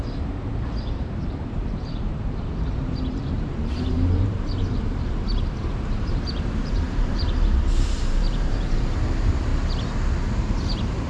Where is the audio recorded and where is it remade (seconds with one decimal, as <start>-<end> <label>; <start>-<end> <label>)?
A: 0.0-9.5 remade; 9.5-10.3 recorded; 10.3-11.1 remade